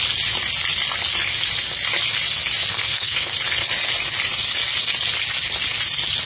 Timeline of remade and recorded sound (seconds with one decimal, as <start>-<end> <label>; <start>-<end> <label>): 0.0-2.7 recorded; 2.7-3.3 remade; 3.3-6.3 recorded

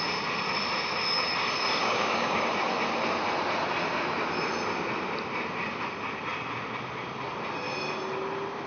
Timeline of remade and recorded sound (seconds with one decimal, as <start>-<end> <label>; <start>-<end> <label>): 0.0-1.8 recorded; 1.8-2.5 remade; 2.5-8.7 recorded

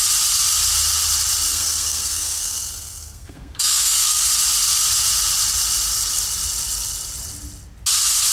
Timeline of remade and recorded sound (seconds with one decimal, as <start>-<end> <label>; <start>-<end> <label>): 0.0-1.5 recorded; 1.5-4.3 remade; 4.3-8.3 recorded

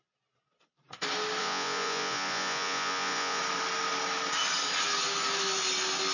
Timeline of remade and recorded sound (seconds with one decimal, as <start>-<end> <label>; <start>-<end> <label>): 0.0-1.4 recorded; 1.4-3.4 remade; 3.4-6.1 recorded

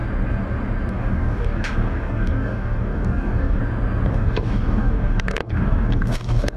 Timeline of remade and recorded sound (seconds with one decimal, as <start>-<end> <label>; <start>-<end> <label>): 0.0-0.9 recorded; 0.9-3.6 remade; 3.6-4.1 recorded; 4.1-6.6 remade

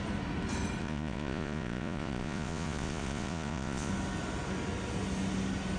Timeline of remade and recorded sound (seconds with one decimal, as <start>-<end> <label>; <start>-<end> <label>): 0.0-0.8 recorded; 0.8-3.9 remade; 3.9-5.8 recorded

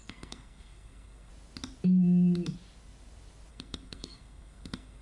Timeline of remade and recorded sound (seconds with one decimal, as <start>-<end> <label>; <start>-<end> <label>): 0.0-1.3 remade; 1.3-3.5 recorded; 3.5-5.0 remade

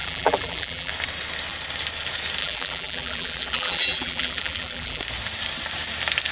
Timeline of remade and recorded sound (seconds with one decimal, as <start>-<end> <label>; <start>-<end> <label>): 0.0-0.9 remade; 0.9-2.4 recorded; 2.4-5.0 remade; 5.0-6.3 recorded